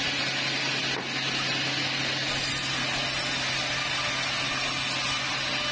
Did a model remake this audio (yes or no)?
no